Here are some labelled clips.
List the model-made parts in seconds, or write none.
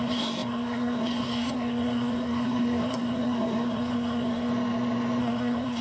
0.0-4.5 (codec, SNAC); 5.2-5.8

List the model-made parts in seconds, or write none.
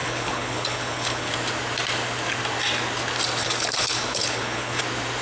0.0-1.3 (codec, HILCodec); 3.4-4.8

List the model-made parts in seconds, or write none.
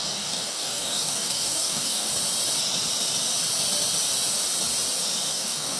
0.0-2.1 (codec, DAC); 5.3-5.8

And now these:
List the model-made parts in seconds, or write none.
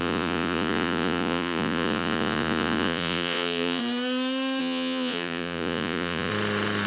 0.0-3.8 (vocoder, Vocos); 4.6-6.3